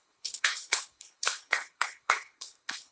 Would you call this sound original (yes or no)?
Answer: no